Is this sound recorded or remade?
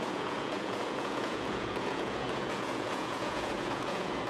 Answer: remade